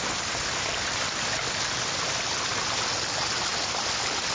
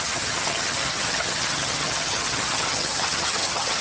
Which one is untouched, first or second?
first